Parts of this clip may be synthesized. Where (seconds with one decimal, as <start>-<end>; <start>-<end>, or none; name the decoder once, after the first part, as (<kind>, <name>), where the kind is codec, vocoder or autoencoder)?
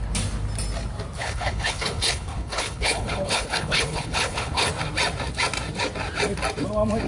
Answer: 1.2-4.7 (codec, HILCodec)